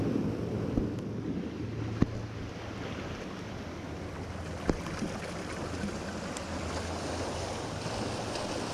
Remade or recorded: recorded